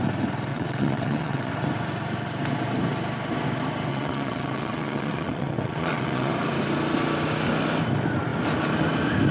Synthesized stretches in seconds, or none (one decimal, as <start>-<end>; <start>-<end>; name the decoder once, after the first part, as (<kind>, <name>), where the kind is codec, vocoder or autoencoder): 0.5-1.5 (vocoder, WaveNeXt); 3.9-6.3